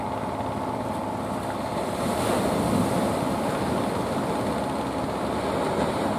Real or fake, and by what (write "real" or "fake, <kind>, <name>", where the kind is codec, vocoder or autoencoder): real